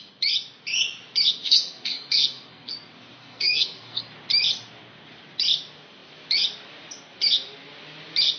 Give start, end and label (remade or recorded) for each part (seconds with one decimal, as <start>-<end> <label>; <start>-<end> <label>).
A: 0.0-1.4 recorded; 1.4-2.7 remade; 2.7-3.2 recorded; 3.2-4.0 remade; 4.0-8.4 recorded